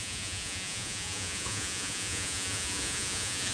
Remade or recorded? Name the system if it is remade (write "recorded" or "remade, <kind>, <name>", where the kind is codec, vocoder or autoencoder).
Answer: remade, vocoder, Vocos